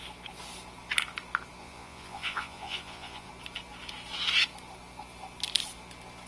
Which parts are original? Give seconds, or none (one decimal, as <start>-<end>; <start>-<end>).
0.0-1.6; 3.3-6.3